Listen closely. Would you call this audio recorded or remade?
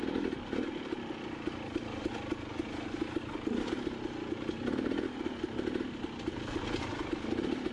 recorded